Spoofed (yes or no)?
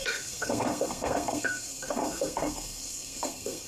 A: yes